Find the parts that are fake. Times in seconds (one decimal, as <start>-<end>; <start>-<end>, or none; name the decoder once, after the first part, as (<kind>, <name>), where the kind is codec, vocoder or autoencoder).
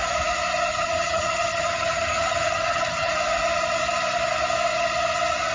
0.7-3.1 (vocoder, HiFi-GAN)